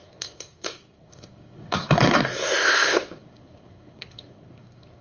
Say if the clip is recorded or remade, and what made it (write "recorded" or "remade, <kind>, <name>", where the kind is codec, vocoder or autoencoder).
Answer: remade, codec, SNAC